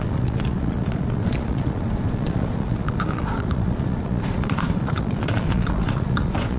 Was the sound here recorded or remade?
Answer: remade